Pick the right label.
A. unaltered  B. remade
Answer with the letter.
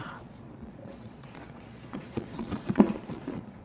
B